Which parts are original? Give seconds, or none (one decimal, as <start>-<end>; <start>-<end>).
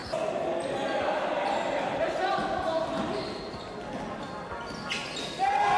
0.0-5.8